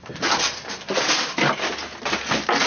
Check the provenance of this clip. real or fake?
real